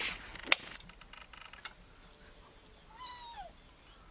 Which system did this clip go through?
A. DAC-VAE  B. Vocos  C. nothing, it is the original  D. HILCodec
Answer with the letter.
C